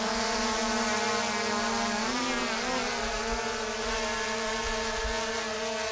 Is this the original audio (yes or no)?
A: yes